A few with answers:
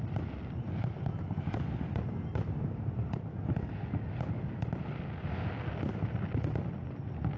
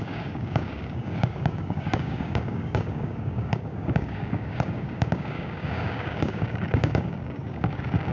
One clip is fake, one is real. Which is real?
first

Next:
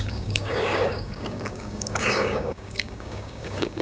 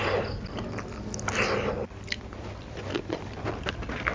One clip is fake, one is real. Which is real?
second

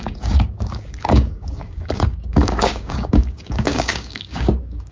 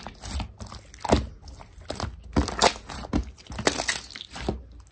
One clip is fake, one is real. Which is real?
second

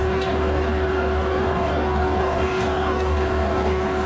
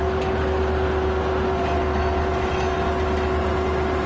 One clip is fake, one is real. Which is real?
second